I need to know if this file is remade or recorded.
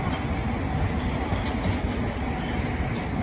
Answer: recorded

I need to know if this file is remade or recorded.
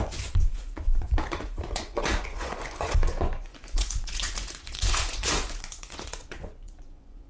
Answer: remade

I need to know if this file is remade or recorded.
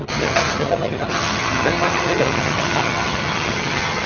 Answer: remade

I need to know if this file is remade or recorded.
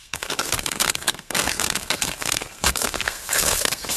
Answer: remade